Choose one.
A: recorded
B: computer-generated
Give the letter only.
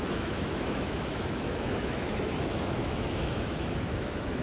B